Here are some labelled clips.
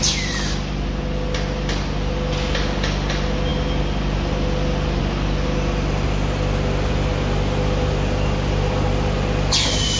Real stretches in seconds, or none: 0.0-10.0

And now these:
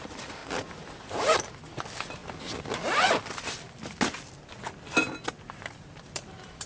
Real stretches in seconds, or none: 0.4-0.9; 2.2-5.4